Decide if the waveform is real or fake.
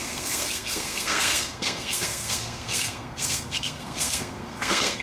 fake